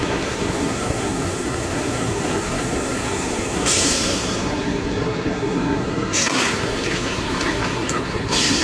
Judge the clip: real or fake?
fake